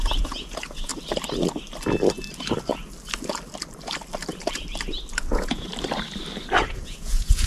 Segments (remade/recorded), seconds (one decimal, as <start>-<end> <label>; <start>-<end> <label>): 0.0-0.9 remade; 0.9-5.3 recorded; 5.3-5.7 remade; 5.7-6.7 recorded; 6.7-7.5 remade